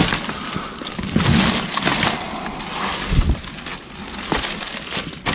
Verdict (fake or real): real